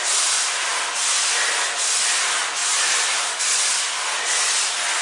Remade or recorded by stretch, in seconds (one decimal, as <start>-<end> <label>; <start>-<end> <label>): 0.0-5.0 recorded